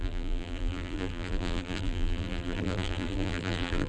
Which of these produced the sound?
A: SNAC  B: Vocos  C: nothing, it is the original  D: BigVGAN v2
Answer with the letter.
D